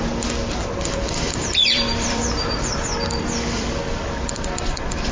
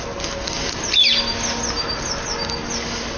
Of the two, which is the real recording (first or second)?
second